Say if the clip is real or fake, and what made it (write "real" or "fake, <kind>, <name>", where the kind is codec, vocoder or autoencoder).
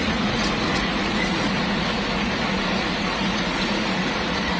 fake, vocoder, Vocos